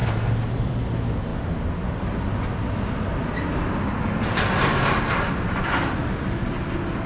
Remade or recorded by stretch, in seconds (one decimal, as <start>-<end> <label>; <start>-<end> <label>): 0.0-7.1 recorded